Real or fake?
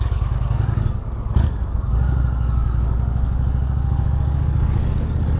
fake